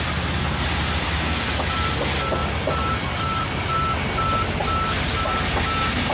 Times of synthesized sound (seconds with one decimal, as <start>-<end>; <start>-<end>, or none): none